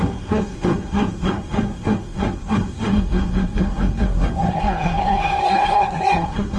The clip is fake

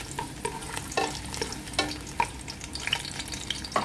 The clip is real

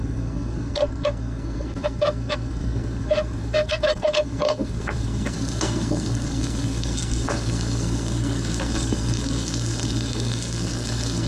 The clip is fake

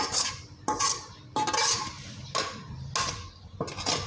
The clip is real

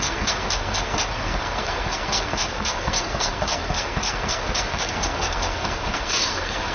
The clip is fake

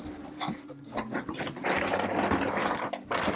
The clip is real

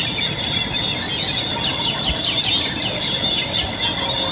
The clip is real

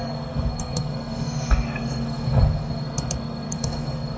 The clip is fake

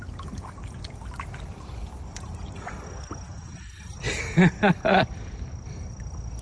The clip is real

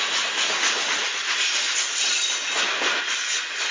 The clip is real